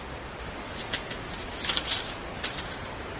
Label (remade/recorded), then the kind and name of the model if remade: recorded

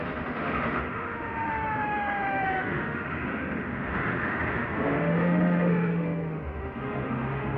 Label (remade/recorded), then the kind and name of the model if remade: remade, autoencoder, DAC-VAE